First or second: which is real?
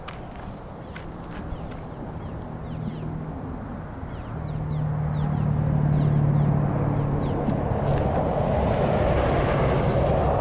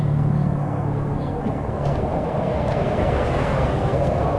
first